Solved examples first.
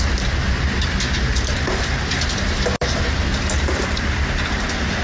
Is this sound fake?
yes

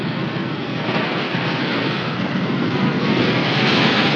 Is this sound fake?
yes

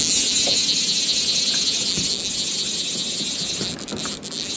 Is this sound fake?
no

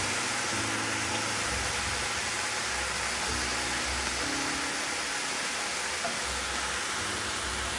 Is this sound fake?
no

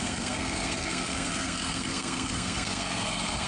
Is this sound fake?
yes